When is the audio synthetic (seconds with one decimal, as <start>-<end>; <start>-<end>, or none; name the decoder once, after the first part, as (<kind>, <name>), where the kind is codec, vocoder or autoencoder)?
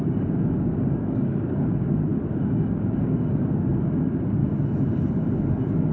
0.0-4.4 (codec, DAC); 5.1-5.9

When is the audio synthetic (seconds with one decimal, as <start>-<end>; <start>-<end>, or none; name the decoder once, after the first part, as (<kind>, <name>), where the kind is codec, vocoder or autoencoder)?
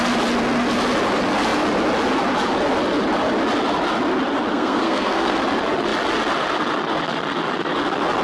4.5-5.4 (codec, SNAC)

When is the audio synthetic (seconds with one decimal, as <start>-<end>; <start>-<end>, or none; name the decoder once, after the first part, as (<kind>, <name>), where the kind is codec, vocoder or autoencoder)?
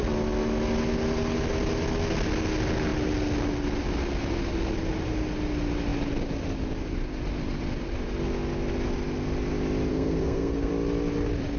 9.9-10.7 (codec, SNAC)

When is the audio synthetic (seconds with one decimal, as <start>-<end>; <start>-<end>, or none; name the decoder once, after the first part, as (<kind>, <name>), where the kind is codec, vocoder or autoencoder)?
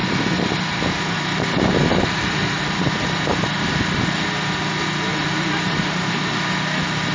0.0-4.3 (vocoder, BigVGAN v2); 5.1-6.1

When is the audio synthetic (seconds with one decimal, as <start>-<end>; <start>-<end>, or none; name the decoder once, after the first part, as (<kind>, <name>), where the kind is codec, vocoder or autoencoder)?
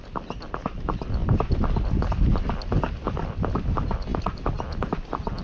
1.2-2.5 (vocoder, BigVGAN v2)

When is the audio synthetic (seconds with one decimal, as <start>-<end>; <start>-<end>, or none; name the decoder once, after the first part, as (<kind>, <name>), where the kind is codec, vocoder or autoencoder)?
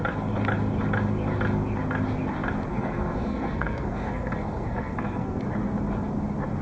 2.7-5.4 (codec, SNAC)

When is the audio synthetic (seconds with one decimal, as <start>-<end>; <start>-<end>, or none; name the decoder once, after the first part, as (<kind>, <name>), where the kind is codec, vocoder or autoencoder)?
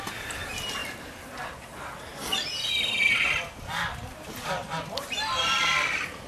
0.8-3.5 (vocoder, BigVGAN v2); 5.4-6.3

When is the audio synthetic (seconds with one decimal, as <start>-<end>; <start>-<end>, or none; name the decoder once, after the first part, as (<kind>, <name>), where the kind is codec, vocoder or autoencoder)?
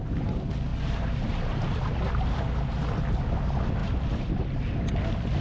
0.7-2.7 (vocoder, BigVGAN v2); 3.8-4.3